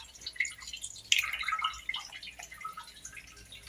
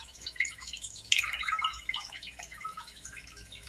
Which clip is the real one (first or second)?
first